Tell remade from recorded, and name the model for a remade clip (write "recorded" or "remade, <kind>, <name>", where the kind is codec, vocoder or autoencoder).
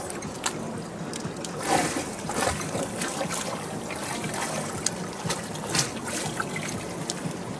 recorded